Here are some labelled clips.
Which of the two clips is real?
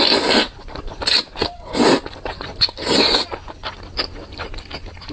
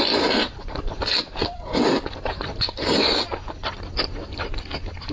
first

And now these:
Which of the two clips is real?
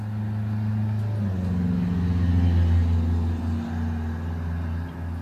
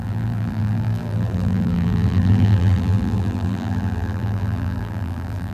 first